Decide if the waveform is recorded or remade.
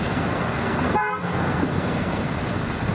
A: remade